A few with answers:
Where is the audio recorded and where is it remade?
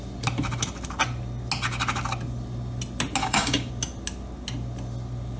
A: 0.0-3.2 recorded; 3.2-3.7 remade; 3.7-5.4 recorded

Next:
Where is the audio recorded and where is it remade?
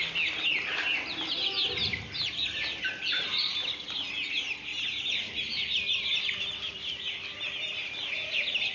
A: 0.0-8.7 recorded